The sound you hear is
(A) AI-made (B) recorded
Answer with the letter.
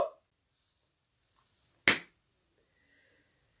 B